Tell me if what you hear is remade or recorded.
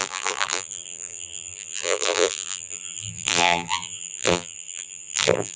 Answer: remade